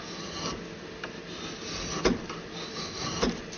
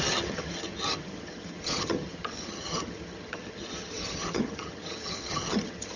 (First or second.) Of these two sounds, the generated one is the second